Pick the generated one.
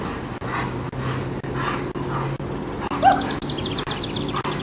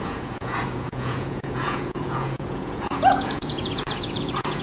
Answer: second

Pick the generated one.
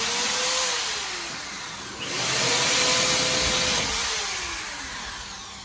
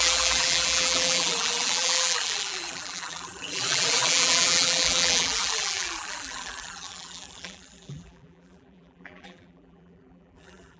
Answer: second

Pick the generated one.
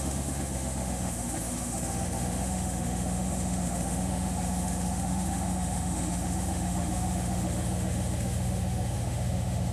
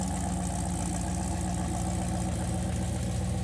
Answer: first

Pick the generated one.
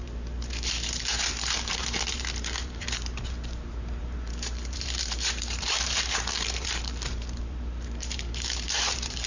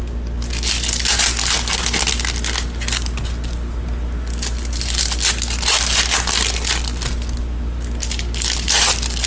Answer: first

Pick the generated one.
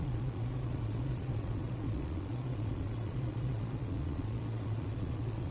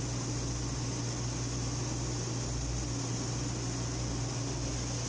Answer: first